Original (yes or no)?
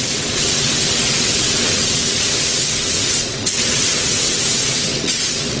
no